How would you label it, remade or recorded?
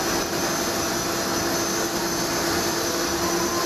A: recorded